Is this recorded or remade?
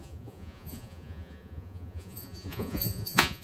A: remade